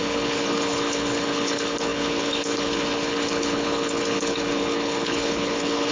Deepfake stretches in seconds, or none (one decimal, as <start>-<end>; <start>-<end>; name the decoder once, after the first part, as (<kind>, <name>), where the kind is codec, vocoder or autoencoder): 0.0-5.9 (codec, HILCodec)